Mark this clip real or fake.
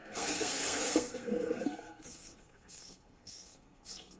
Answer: fake